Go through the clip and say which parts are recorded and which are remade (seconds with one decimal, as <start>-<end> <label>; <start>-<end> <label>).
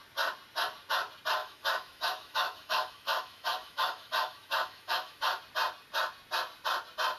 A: 0.0-1.4 recorded; 1.4-5.4 remade; 5.4-7.2 recorded